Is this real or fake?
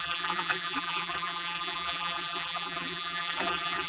fake